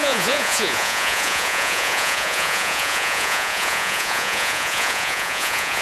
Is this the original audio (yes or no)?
no